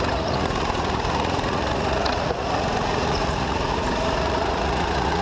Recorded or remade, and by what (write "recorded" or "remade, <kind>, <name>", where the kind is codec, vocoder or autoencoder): remade, vocoder, Vocos